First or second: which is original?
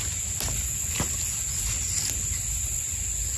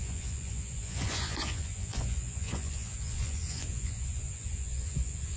first